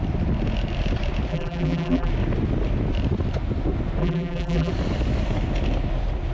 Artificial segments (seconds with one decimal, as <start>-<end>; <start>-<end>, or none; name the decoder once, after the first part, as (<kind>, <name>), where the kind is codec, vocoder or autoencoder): 1.3-2.1 (vocoder, BigVGAN v2); 4.0-4.7